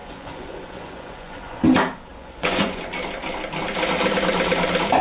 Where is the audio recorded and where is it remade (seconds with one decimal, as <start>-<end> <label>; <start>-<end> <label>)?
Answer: 0.0-1.6 remade; 1.6-2.1 recorded; 2.1-2.8 remade; 2.8-5.0 recorded